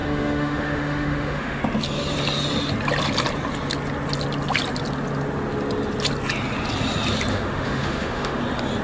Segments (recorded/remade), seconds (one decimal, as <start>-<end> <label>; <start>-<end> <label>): 0.0-1.6 remade; 1.6-7.3 recorded; 7.3-8.4 remade; 8.4-8.8 recorded